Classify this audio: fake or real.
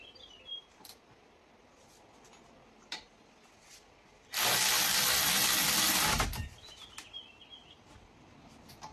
real